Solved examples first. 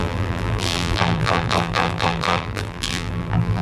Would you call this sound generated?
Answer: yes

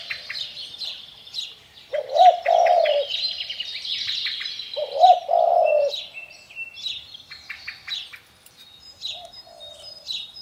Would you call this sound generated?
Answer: no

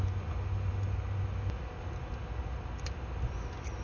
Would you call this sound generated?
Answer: no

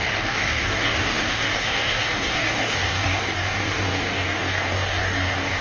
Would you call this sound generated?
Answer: yes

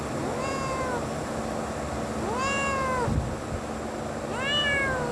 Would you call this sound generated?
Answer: no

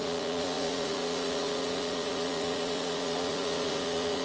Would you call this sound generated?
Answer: yes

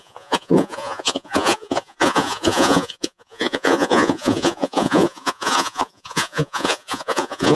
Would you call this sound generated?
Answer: yes